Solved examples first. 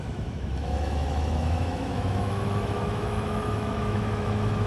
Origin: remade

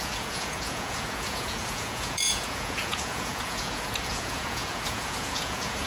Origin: remade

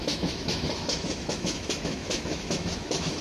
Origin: remade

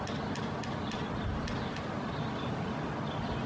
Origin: recorded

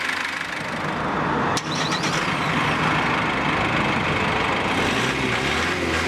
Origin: recorded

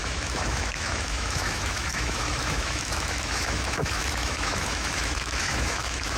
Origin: remade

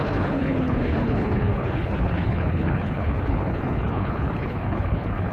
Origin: remade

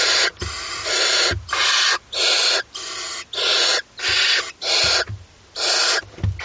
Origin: recorded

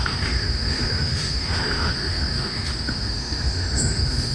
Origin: remade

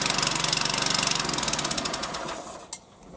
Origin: recorded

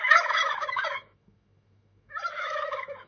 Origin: remade